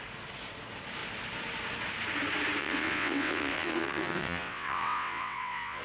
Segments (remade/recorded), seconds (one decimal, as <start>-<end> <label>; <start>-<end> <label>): 0.0-2.6 recorded; 2.6-5.8 remade